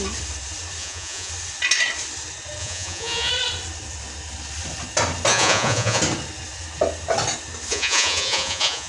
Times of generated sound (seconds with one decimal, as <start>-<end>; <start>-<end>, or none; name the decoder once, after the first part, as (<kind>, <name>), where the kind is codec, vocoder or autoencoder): 0.8-1.3 (vocoder, Vocos); 2.6-3.3; 5.3-6.0; 7.7-8.9